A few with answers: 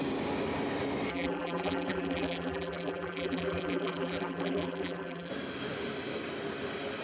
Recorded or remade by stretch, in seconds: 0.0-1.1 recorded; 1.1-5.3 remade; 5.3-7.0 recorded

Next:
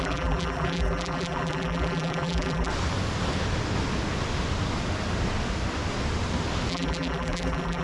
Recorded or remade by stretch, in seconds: 0.0-2.7 remade; 2.7-6.7 recorded; 6.7-7.8 remade

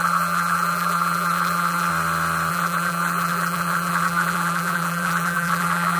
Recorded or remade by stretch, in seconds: 0.0-1.9 remade; 1.9-2.5 recorded; 2.5-6.0 remade

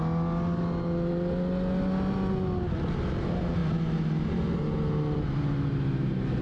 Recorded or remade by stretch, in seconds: 0.0-6.4 recorded

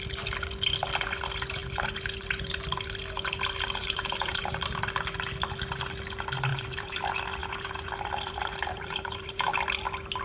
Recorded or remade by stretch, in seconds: 0.0-3.8 recorded; 3.8-4.8 remade; 4.8-6.5 recorded; 6.5-7.0 remade; 7.0-7.4 recorded; 7.4-9.5 remade; 9.5-10.2 recorded